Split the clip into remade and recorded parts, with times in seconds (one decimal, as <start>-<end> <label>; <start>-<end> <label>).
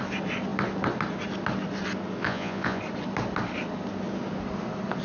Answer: 0.0-2.2 recorded; 2.2-2.8 remade; 2.8-5.0 recorded